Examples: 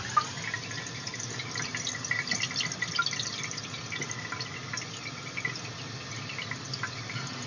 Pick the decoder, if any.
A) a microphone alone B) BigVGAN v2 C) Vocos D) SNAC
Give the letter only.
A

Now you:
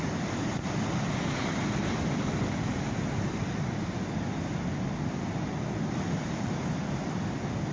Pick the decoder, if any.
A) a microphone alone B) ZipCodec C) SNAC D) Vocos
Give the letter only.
A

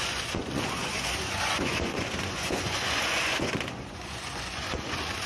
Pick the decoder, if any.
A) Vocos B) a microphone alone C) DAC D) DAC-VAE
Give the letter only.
A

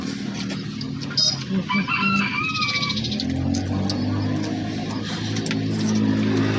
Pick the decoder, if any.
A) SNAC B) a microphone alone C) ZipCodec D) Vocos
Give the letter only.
B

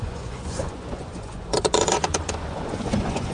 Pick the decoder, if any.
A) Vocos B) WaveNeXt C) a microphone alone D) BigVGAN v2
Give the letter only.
A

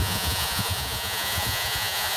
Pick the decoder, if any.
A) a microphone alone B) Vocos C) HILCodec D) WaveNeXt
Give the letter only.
B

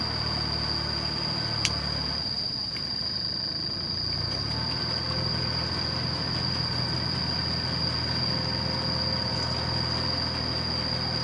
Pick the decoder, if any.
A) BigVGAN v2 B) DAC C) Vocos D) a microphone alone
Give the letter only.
D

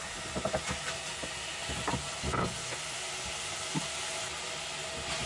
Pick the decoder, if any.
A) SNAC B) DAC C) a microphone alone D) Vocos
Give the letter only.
C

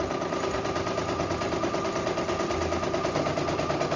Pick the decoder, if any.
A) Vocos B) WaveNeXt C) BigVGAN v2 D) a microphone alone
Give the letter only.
D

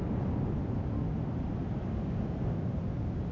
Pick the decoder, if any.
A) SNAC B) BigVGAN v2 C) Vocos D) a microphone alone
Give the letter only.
D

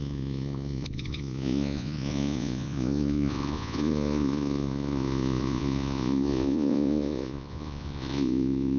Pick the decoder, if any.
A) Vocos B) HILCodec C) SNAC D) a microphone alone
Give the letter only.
A